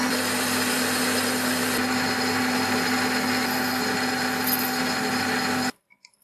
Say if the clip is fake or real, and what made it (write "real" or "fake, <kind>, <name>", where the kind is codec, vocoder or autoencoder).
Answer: real